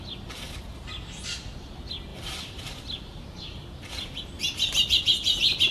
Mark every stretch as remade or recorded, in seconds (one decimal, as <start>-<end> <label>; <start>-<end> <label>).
0.0-2.1 recorded; 2.1-5.7 remade